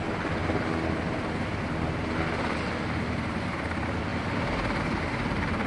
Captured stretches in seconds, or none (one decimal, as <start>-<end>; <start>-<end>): 0.0-5.7